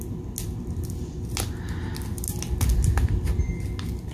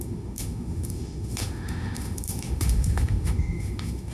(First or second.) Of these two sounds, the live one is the first